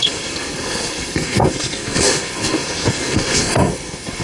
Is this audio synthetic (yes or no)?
yes